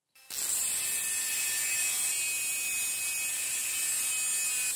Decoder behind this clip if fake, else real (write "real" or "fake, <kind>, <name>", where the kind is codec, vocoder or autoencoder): real